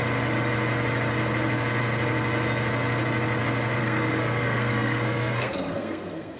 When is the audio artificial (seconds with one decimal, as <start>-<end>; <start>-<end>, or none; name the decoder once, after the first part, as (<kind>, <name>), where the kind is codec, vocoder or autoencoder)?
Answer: 3.8-6.4 (codec, SNAC)